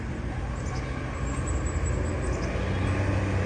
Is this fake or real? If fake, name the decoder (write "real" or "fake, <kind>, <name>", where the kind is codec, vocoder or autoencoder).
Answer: real